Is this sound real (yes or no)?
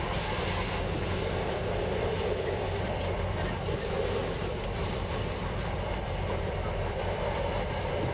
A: no